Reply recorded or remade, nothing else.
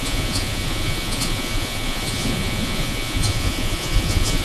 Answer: remade